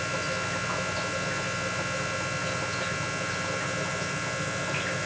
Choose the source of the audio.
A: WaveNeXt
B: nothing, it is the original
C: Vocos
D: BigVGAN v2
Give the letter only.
B